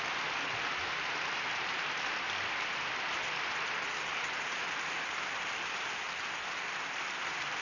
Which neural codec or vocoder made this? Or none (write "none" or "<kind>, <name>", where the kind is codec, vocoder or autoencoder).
vocoder, BigVGAN v2